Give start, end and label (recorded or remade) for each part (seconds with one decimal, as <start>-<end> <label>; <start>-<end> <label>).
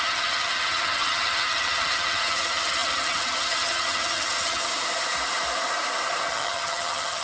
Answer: 0.0-4.7 remade; 4.7-6.3 recorded; 6.3-7.2 remade